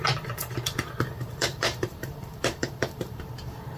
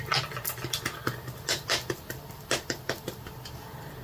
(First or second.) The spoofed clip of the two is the first